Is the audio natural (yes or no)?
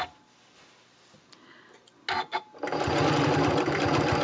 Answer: yes